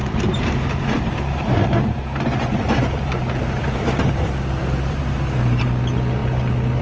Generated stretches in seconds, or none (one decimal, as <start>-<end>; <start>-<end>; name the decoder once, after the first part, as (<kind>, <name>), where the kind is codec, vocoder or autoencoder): 0.0-4.1 (vocoder, BigVGAN v2); 4.6-5.6